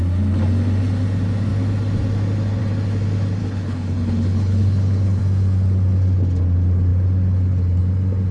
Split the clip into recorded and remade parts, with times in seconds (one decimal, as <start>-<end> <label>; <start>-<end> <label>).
0.0-3.4 recorded; 3.4-5.2 remade; 5.2-8.3 recorded